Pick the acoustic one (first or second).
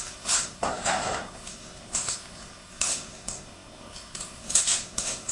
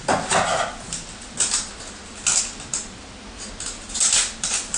second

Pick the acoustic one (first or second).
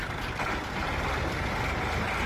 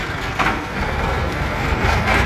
first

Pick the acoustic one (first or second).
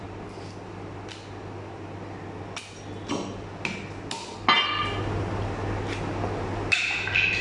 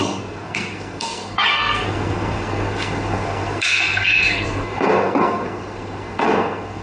first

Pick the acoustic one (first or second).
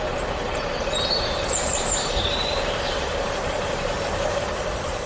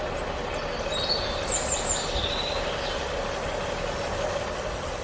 second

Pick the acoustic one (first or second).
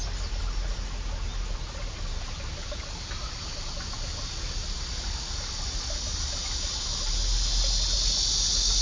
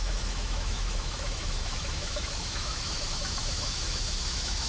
first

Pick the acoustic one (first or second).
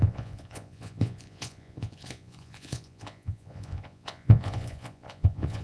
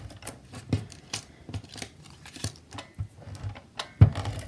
second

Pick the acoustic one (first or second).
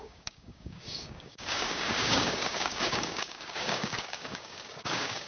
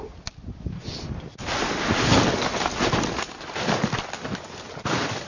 second